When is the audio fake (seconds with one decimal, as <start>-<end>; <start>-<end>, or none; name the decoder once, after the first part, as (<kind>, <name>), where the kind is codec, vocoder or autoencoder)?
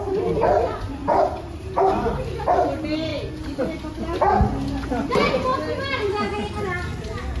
1.0-1.8 (vocoder, BigVGAN v2)